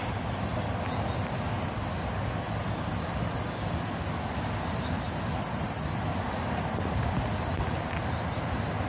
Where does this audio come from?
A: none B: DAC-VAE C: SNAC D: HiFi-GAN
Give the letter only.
A